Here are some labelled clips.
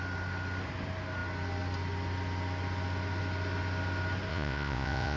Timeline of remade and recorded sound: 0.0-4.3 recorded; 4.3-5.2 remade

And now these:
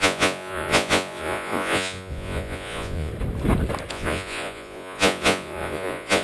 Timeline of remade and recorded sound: 0.0-3.1 remade; 3.1-3.9 recorded; 3.9-6.2 remade